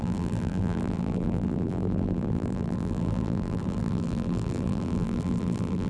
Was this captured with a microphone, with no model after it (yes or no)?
no